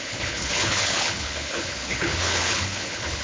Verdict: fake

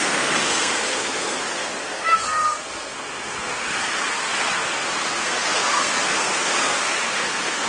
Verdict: fake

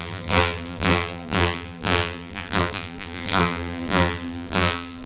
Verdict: fake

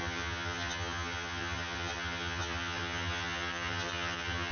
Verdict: fake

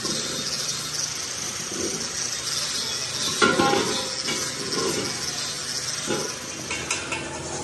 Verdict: real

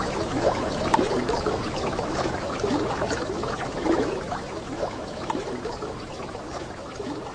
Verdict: fake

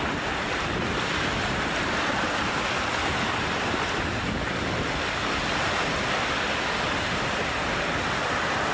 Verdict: real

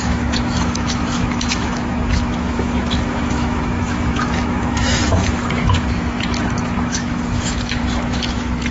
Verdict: fake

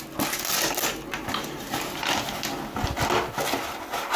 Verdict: real